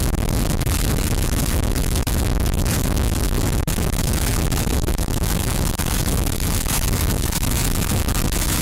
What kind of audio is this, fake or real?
fake